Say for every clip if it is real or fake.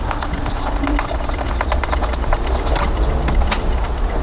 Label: real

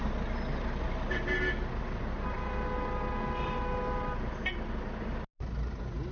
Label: real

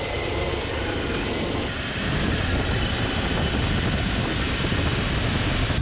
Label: real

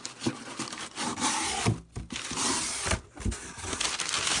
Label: real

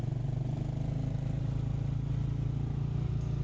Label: real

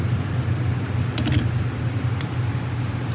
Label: real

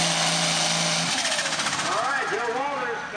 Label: real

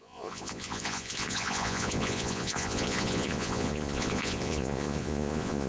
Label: fake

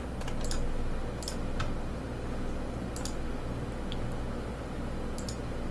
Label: real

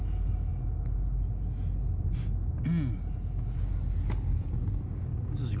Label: real